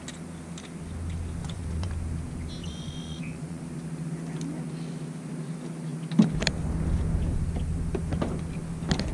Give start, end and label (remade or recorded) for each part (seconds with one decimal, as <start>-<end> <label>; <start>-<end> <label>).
0.0-1.4 recorded; 1.4-1.9 remade; 1.9-2.6 recorded; 2.6-3.6 remade; 3.6-9.1 recorded